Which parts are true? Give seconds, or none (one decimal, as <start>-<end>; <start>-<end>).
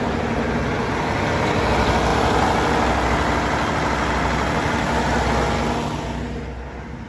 0.0-7.1